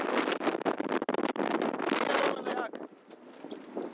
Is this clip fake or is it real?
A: real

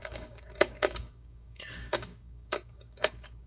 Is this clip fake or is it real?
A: fake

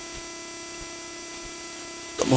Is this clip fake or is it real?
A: real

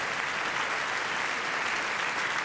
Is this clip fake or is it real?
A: real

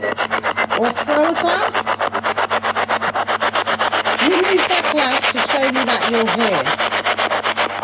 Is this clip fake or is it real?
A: real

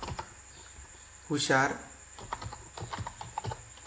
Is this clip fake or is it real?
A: real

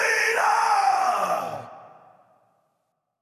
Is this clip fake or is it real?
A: real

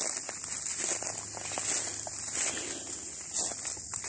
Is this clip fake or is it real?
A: real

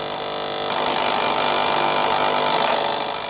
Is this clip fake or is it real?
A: real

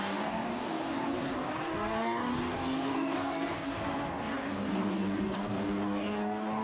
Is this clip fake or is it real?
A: fake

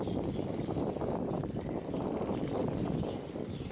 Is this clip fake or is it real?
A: real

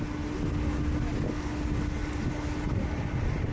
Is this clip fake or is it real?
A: real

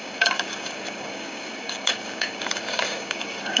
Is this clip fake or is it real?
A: fake